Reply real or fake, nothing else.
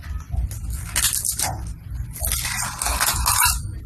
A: real